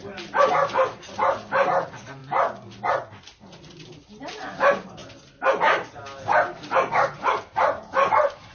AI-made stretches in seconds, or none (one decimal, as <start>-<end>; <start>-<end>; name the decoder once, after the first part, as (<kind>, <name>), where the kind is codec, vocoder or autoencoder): none